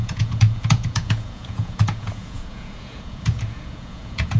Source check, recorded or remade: remade